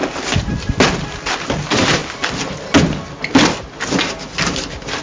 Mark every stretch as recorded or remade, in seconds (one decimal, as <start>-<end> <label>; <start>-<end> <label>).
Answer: 0.0-1.3 recorded; 1.3-2.0 remade; 2.0-5.0 recorded